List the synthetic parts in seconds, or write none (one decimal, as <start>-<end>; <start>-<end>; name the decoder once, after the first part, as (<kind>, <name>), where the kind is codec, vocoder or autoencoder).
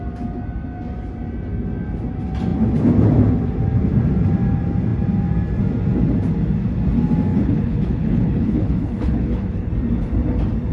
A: 7.3-9.7 (codec, HILCodec)